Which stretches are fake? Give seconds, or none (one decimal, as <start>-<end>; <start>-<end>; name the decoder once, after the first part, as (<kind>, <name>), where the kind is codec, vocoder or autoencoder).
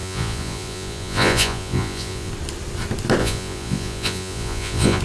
0.0-2.3 (vocoder, Vocos); 3.2-5.0